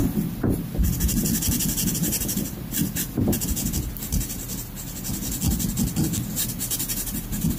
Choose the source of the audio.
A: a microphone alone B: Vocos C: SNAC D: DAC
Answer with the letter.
A